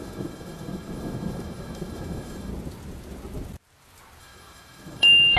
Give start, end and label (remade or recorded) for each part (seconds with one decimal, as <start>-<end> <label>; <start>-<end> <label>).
0.0-2.5 remade; 2.5-4.2 recorded; 4.2-5.4 remade